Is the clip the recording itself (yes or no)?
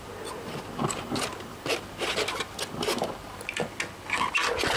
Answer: yes